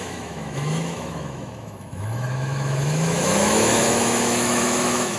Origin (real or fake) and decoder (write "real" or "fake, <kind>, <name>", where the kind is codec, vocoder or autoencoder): fake, autoencoder, DAC-VAE